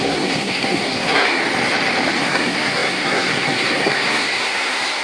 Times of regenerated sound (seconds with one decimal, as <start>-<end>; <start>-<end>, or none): 0.0-1.4; 2.2-5.0